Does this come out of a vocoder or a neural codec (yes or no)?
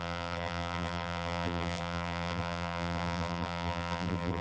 yes